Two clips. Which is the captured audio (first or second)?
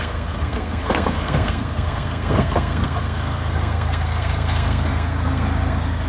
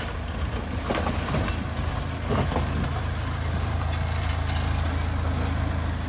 second